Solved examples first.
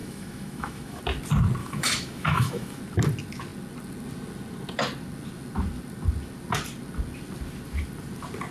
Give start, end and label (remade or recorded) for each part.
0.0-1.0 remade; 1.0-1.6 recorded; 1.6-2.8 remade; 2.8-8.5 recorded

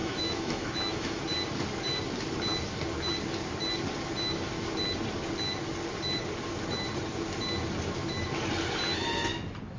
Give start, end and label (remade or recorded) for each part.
0.0-1.2 remade; 1.2-9.8 recorded

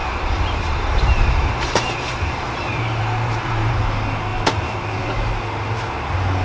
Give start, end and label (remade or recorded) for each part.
0.0-3.7 remade; 3.7-6.4 recorded

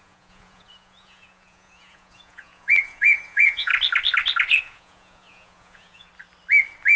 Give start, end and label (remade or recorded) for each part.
0.0-3.7 remade; 3.7-4.6 recorded; 4.6-6.1 remade; 6.1-7.0 recorded

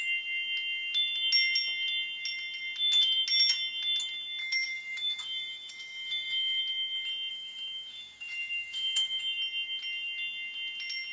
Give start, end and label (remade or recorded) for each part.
0.0-4.4 recorded; 4.4-6.6 remade; 6.6-7.3 recorded; 7.3-9.2 remade; 9.2-11.1 recorded